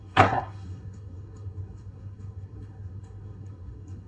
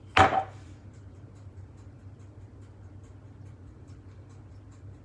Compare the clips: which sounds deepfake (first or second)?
first